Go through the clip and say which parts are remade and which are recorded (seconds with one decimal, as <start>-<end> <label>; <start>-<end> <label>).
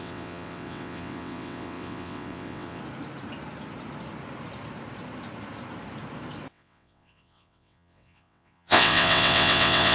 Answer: 0.0-2.8 remade; 2.8-6.5 recorded; 6.5-9.9 remade